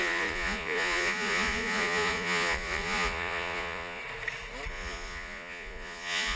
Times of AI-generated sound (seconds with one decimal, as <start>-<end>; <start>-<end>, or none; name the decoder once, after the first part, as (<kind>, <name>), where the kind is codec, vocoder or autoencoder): 0.0-4.0 (vocoder, Vocos); 4.7-6.4